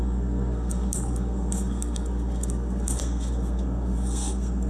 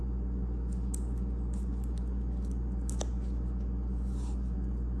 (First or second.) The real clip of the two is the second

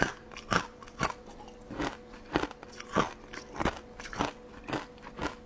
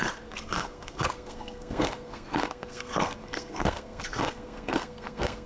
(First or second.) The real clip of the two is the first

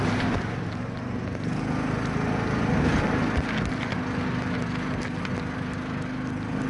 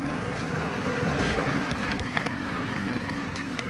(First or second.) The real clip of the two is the first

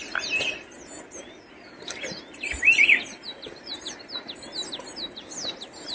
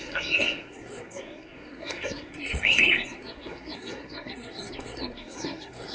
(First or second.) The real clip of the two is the first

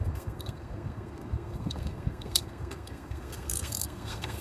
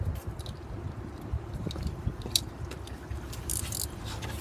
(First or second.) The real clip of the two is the second